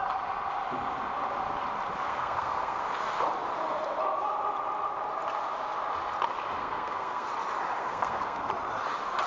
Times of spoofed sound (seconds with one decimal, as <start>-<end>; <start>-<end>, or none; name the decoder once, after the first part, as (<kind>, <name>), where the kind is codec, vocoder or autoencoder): 2.1-2.8 (codec, SNAC); 6.6-7.3; 7.8-8.5